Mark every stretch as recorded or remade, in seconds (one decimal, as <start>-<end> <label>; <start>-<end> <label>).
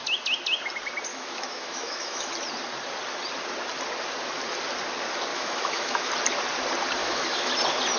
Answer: 0.0-1.1 recorded; 1.1-2.3 remade; 2.3-5.3 recorded; 5.3-6.1 remade; 6.1-7.0 recorded; 7.0-7.5 remade; 7.5-8.0 recorded